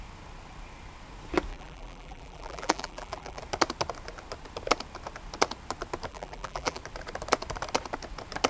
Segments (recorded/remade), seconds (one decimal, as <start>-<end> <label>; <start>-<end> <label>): 0.0-1.5 recorded; 1.5-3.4 remade; 3.4-6.1 recorded; 6.1-6.8 remade; 6.8-8.5 recorded